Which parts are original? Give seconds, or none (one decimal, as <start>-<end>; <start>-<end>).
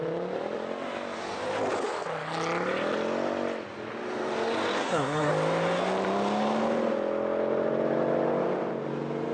0.0-4.8; 5.3-9.3